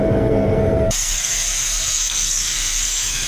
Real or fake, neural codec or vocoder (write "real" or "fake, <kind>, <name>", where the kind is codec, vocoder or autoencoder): fake, codec, SNAC